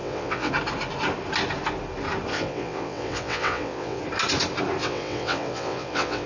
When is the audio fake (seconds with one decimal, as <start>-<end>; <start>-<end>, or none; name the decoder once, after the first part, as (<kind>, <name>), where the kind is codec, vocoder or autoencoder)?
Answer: 0.0-0.5 (vocoder, WaveNeXt); 2.3-4.0; 4.8-6.3